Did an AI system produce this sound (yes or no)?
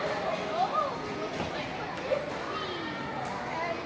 no